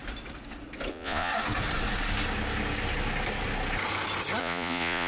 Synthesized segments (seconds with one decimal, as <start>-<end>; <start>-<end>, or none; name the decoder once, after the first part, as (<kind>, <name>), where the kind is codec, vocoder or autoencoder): 0.9-1.3 (vocoder, Vocos); 4.4-5.1